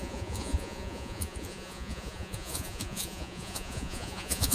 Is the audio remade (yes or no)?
yes